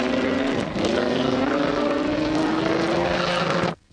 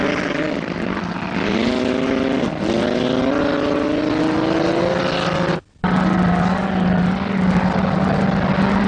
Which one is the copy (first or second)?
first